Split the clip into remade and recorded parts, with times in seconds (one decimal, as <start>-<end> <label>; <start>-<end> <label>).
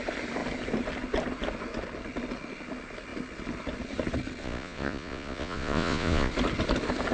0.0-4.4 recorded; 4.4-6.3 remade; 6.3-7.1 recorded